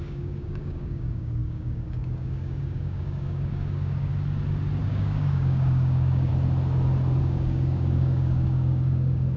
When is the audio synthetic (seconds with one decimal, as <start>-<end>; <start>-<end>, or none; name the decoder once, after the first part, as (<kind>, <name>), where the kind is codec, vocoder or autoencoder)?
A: 0.0-4.1 (codec, DAC); 4.8-6.3; 7.2-9.4